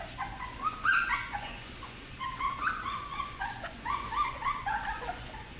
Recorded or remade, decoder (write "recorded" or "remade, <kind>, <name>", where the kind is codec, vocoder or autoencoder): remade, vocoder, Vocos